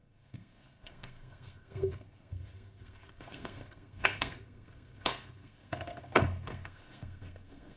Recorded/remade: remade